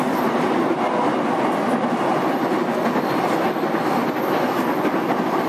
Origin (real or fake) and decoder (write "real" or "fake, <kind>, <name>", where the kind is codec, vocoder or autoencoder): real